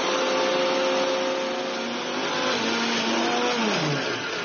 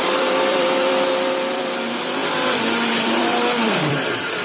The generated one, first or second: second